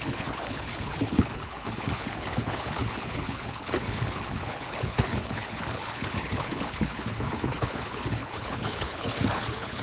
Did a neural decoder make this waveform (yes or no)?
yes